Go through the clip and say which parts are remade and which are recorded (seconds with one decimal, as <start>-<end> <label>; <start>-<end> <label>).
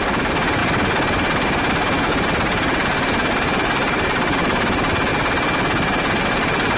0.0-0.6 remade; 0.6-2.1 recorded; 2.1-5.1 remade; 5.1-6.2 recorded; 6.2-6.8 remade